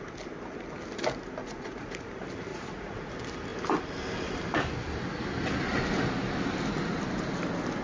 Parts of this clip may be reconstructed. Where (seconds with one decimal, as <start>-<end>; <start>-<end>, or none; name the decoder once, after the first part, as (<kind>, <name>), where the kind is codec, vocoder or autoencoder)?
1.4-2.1 (vocoder, Vocos); 2.5-3.1